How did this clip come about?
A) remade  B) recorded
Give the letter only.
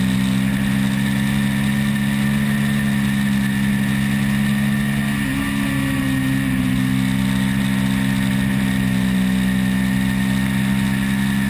B